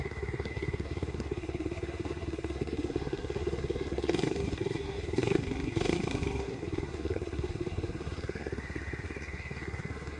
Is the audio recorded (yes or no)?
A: no